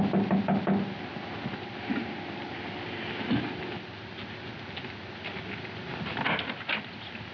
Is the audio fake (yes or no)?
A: no